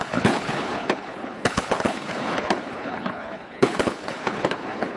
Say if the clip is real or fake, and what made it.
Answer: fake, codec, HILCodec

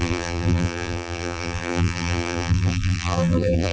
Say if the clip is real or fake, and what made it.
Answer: fake, vocoder, BigVGAN v2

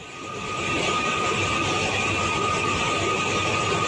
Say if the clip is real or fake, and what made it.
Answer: real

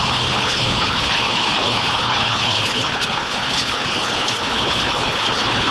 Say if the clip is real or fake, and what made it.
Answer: fake, codec, HILCodec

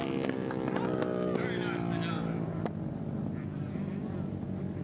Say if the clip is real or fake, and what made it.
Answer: real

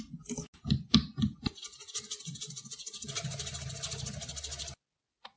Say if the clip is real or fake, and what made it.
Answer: real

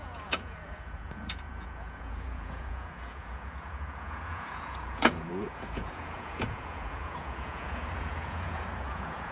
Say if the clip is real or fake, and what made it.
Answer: fake, vocoder, Vocos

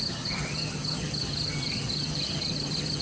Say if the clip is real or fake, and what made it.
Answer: fake, vocoder, HiFi-GAN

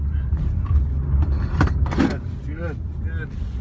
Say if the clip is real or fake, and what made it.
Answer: real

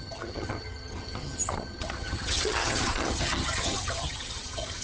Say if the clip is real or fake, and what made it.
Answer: fake, vocoder, HiFi-GAN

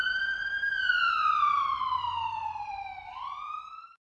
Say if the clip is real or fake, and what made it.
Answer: fake, vocoder, BigVGAN v2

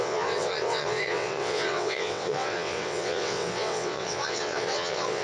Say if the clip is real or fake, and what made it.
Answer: fake, vocoder, WaveNeXt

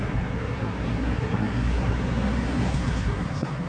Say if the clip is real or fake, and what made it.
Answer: fake, codec, SNAC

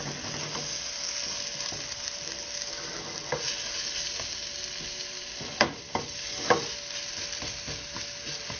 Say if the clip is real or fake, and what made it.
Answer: real